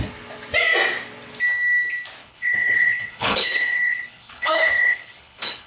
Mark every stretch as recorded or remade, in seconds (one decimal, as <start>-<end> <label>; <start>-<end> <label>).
0.0-2.2 recorded; 2.2-5.7 remade